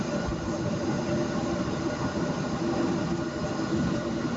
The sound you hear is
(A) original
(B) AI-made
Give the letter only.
A